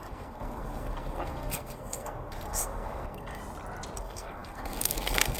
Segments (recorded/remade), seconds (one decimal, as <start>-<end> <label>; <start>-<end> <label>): 0.0-3.4 remade; 3.4-4.0 recorded; 4.0-5.4 remade